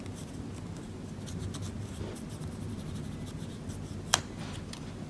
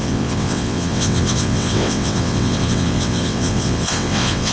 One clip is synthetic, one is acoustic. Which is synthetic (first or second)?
second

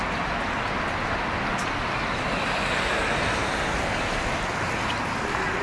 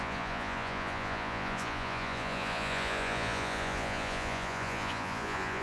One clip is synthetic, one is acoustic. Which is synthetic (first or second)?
second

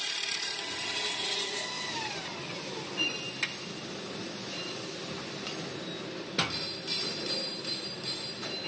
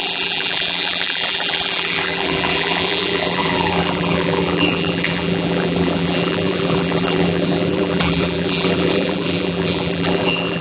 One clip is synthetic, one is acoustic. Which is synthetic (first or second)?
second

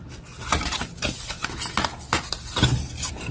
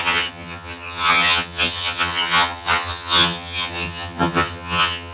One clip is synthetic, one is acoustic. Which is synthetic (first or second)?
second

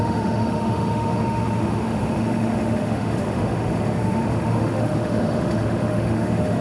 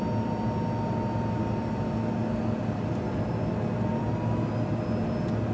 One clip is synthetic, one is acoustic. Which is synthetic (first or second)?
first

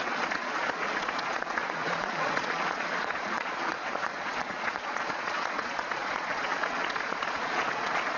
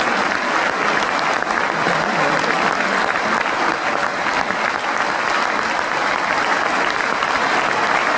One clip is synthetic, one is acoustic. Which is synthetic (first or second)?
first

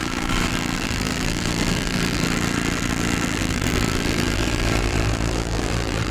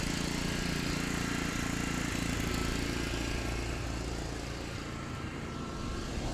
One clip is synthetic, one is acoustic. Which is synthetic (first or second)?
first